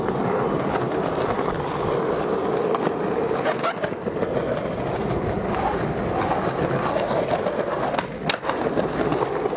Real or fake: real